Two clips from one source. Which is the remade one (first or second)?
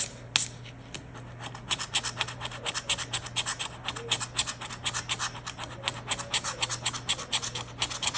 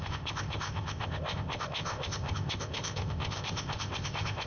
second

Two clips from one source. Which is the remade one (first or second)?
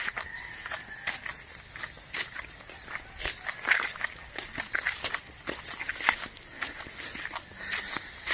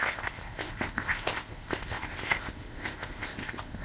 second